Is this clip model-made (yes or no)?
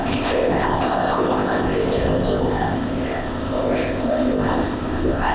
yes